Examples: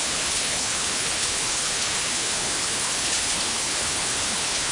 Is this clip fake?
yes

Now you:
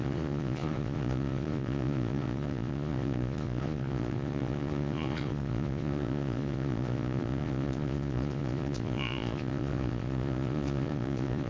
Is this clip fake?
yes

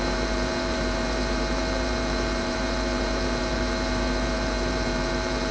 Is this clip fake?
yes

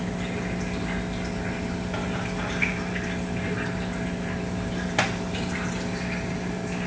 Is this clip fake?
no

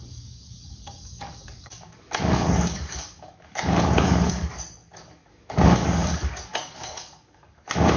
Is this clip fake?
yes